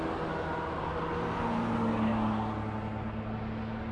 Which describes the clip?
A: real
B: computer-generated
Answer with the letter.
A